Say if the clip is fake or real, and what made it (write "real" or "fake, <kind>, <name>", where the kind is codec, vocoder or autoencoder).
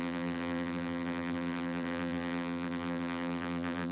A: fake, vocoder, BigVGAN v2